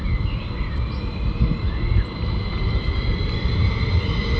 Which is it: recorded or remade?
recorded